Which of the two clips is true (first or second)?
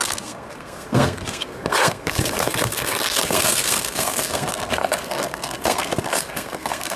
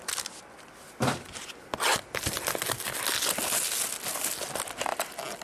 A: second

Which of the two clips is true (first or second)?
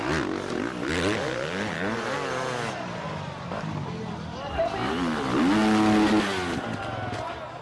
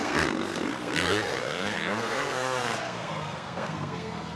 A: first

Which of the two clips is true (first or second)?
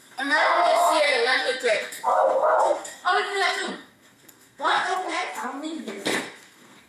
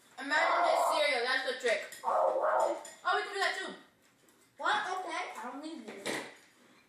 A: second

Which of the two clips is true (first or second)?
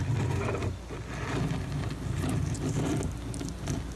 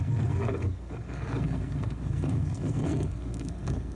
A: first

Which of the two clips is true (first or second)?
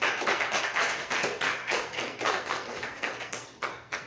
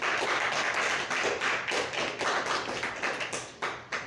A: second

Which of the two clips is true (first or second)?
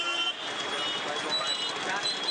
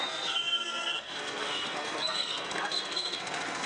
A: first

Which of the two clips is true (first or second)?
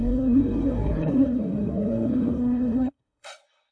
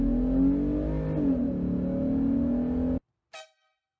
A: second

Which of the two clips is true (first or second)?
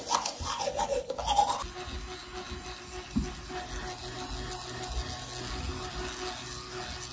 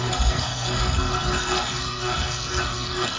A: first